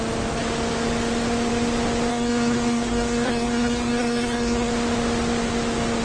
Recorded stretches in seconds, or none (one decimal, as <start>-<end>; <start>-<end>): 0.0-2.1; 4.7-6.0

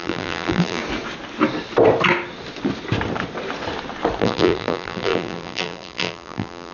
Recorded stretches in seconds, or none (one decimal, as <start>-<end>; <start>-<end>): 0.8-4.2

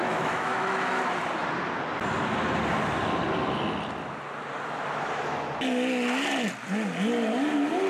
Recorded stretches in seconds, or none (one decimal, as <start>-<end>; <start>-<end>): 1.0-7.9

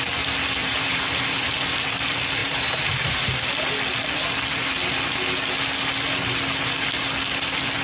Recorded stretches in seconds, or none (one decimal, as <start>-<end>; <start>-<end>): 0.0-0.6; 1.5-2.4; 3.2-7.8

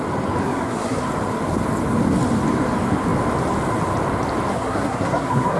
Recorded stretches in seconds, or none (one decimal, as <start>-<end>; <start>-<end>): 0.0-0.4; 1.0-4.5

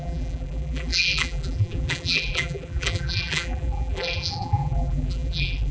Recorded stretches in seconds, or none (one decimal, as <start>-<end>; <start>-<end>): none

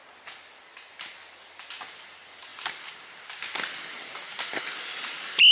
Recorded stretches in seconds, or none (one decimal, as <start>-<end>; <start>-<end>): 0.0-5.5

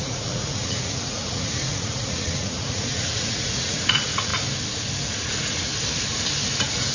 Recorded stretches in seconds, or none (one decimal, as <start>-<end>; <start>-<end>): 4.3-5.1; 5.7-6.5